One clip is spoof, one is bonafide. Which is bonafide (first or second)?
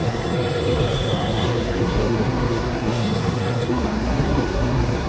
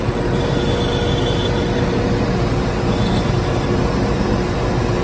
second